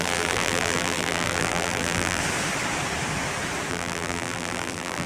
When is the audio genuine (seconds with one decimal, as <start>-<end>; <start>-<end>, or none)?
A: 2.2-3.7